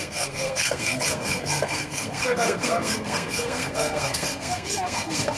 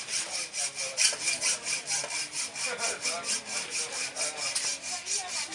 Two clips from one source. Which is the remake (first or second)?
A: first